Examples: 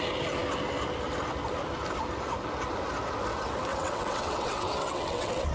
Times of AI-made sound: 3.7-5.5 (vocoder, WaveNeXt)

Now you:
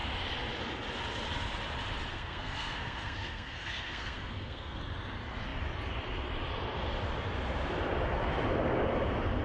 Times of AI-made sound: 2.1-4.8 (codec, SNAC)

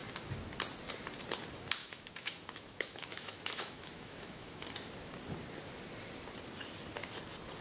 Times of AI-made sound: 1.8-4.6 (autoencoder, DAC-VAE)

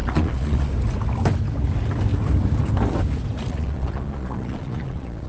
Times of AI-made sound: 0.0-0.7 (vocoder, Vocos); 3.5-5.3